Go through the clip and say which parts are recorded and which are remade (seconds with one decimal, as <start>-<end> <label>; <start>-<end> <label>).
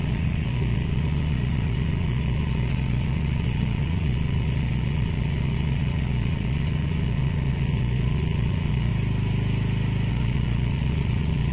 0.0-8.9 remade; 8.9-10.1 recorded; 10.1-11.5 remade